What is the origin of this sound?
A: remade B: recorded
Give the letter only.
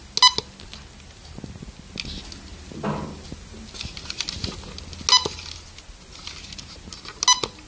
B